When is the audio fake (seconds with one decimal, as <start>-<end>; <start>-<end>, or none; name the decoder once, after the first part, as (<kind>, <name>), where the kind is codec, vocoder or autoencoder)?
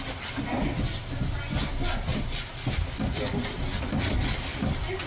0.0-0.5 (vocoder, BigVGAN v2); 2.5-5.1